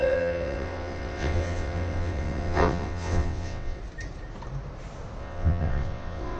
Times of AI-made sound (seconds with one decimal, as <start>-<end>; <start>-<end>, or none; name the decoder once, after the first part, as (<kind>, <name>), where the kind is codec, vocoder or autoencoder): 0.0-3.8 (vocoder, WaveNeXt); 5.2-6.4